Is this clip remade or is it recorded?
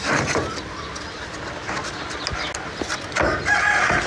recorded